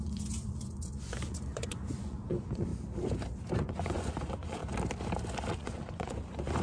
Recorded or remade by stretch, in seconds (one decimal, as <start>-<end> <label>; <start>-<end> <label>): 0.0-2.7 remade; 2.7-3.6 recorded; 3.6-4.6 remade; 4.6-5.5 recorded; 5.5-6.6 remade